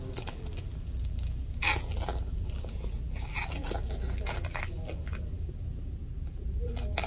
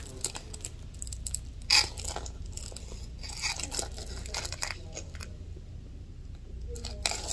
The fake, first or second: first